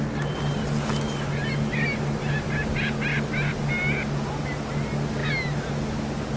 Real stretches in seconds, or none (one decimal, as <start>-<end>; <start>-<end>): 0.0-6.4